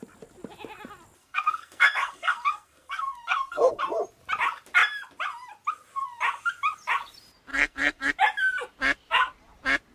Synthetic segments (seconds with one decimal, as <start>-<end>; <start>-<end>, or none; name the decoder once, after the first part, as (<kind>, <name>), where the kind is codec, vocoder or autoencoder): 1.2-3.8 (codec, SNAC); 7.5-8.1